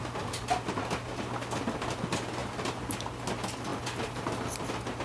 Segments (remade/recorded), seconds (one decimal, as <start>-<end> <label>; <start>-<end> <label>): 0.0-3.7 recorded; 3.7-4.6 remade; 4.6-5.0 recorded